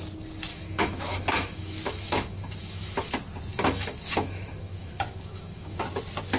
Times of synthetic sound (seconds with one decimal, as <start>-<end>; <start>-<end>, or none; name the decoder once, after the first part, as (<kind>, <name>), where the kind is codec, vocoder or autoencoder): 0.5-3.1 (autoencoder, DAC-VAE); 3.5-5.8